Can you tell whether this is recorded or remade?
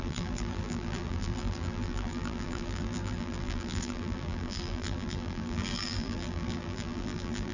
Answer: remade